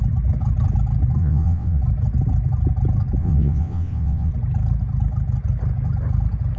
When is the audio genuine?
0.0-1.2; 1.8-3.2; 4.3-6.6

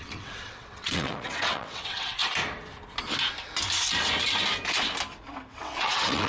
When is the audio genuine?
2.2-5.5

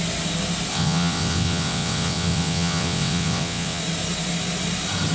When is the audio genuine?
0.0-0.7; 3.8-5.1

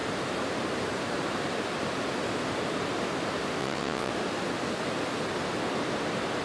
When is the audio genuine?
0.0-3.6; 4.1-6.4

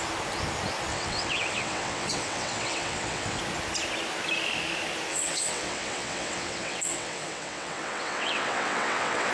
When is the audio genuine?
0.0-0.9; 3.4-5.1